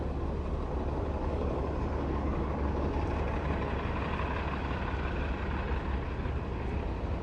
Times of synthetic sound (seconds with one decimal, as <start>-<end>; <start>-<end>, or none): 1.2-2.5